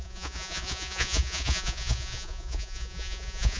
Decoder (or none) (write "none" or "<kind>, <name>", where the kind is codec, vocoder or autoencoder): vocoder, Vocos